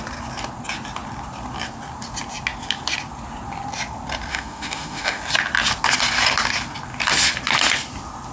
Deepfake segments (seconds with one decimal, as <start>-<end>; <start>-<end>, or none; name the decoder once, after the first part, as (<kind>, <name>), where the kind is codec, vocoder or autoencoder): 4.3-5.2 (autoencoder, DAC-VAE)